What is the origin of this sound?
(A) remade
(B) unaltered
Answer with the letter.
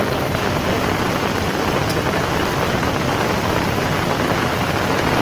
B